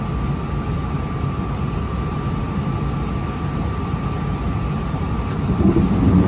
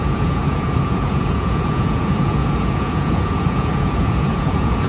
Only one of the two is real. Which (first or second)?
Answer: first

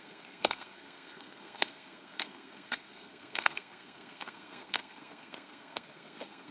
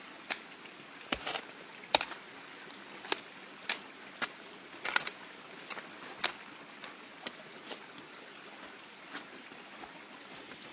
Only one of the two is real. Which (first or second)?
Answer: second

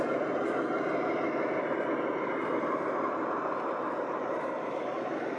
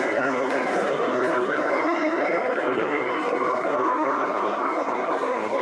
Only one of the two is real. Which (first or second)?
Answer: first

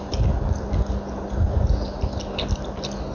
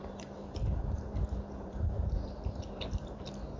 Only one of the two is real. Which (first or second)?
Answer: first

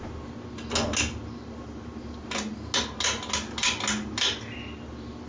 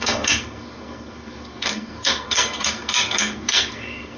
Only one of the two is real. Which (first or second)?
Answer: first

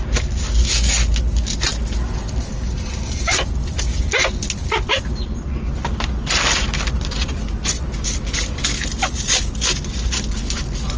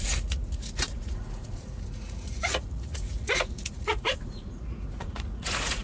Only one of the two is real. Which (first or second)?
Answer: first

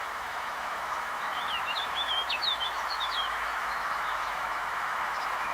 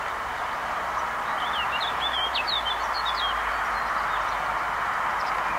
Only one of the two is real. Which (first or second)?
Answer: second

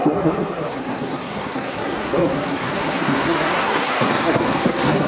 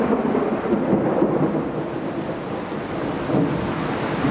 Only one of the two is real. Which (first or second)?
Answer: second